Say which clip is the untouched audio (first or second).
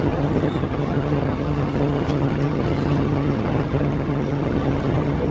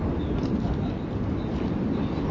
second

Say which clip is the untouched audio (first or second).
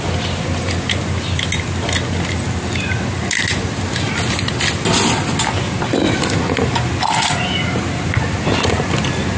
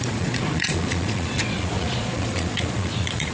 first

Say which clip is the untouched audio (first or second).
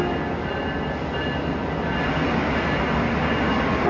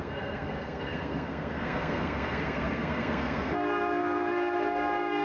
first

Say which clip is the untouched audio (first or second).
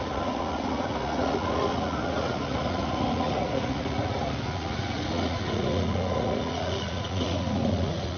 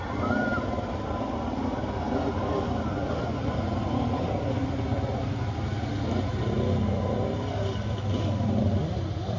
second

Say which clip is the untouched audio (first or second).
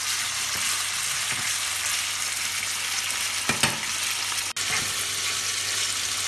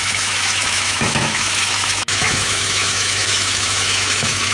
first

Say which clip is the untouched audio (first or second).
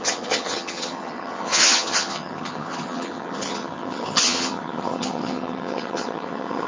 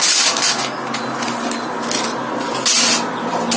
second